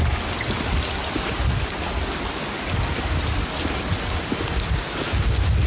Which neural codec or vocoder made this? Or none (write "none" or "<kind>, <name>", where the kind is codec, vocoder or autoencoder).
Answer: none